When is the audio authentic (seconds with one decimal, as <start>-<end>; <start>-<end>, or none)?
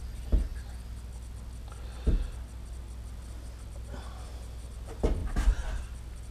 0.0-6.3